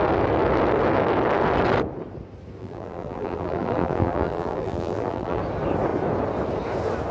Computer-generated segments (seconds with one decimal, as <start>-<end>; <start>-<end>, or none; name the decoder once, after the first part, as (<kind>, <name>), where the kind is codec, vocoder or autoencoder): 2.6-5.4 (vocoder, BigVGAN v2)